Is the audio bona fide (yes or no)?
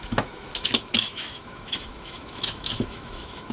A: no